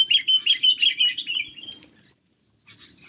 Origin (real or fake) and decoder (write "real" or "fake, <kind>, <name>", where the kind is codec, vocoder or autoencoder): real